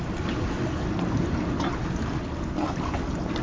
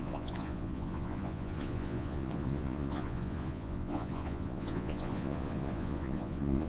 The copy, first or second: second